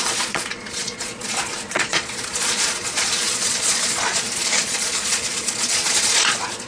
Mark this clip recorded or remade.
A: remade